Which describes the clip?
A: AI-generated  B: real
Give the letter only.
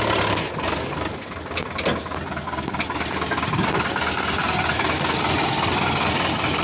B